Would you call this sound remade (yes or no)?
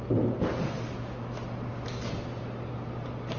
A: no